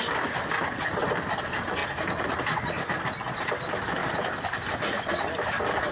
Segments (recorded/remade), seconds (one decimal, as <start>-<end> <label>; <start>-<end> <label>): 0.0-4.0 recorded; 4.0-4.6 remade; 4.6-5.9 recorded